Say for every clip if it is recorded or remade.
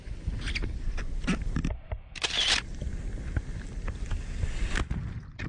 recorded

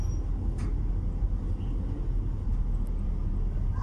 recorded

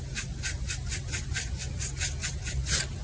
recorded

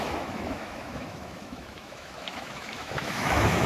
remade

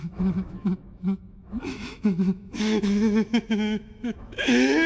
remade